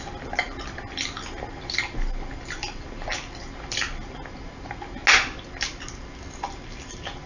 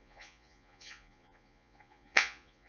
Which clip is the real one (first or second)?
first